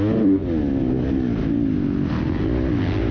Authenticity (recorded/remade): recorded